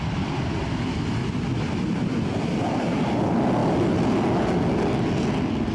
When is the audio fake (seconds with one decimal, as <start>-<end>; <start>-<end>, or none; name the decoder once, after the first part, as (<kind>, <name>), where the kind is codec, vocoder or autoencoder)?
none